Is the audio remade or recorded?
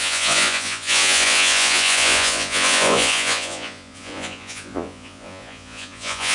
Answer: remade